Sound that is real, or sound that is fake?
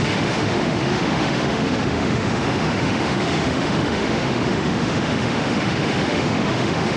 fake